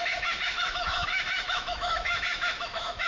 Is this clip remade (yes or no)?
yes